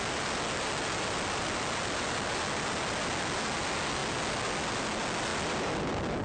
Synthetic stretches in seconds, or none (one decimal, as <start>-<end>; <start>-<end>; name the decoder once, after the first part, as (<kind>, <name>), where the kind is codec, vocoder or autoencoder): none